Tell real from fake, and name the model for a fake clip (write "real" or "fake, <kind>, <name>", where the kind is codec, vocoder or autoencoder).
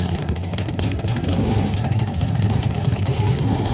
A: fake, codec, SNAC